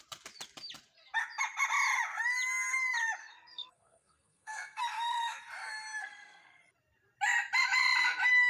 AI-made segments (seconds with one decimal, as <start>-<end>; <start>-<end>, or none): 3.2-4.8; 6.0-6.6